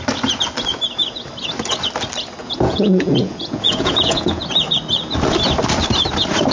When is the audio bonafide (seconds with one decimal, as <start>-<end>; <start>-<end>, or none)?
0.0-2.4; 4.4-6.5